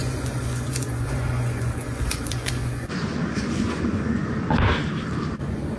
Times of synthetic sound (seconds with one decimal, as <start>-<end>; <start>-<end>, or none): 0.0-4.2; 5.2-5.8